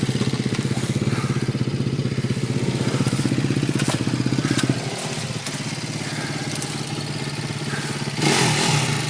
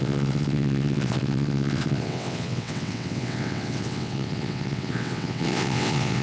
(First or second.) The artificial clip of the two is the second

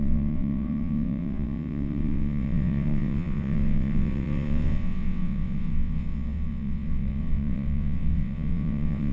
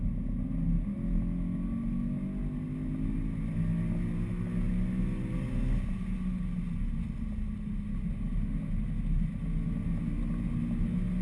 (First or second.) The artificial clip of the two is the first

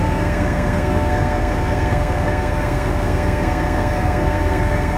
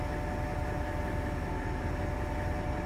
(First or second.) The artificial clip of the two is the first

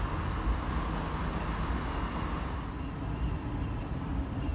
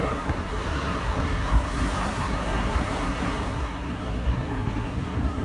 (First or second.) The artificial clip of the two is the second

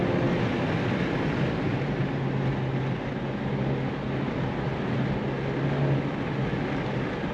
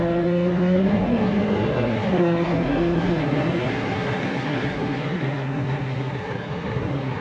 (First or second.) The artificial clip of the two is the second